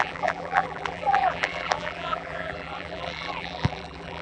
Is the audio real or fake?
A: fake